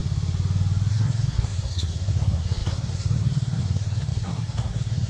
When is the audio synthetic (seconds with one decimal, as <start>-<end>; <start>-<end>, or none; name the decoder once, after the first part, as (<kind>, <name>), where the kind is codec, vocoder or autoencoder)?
0.9-5.1 (codec, SNAC)